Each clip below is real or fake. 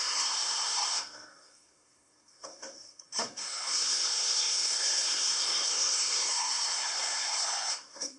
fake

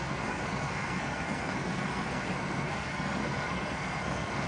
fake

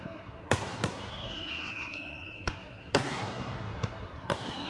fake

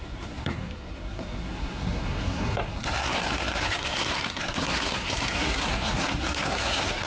fake